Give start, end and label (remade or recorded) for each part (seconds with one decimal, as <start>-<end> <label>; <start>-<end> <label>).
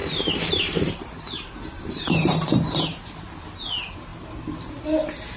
0.0-3.2 remade; 3.2-5.4 recorded